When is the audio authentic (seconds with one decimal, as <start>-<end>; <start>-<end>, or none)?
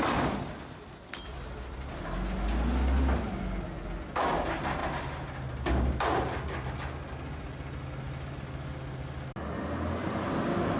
0.0-10.8